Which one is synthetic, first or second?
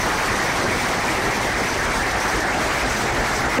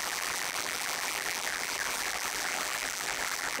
second